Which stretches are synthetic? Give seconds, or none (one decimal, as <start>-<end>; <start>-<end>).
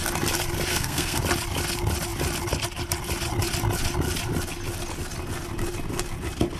0.7-1.2